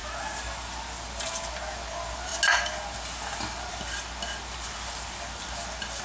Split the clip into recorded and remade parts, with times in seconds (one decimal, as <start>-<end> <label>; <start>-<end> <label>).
0.0-6.0 recorded